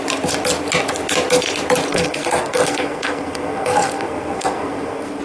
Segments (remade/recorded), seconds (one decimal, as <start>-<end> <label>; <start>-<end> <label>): 0.0-1.9 recorded; 1.9-5.2 remade

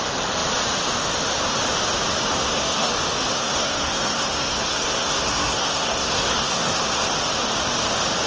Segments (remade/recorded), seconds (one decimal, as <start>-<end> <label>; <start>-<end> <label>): 0.0-2.3 recorded; 2.3-2.9 remade; 2.9-3.3 recorded; 3.3-7.1 remade; 7.1-8.3 recorded